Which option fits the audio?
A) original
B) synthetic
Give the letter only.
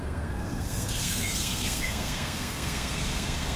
B